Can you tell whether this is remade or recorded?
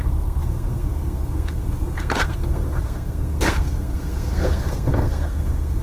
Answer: remade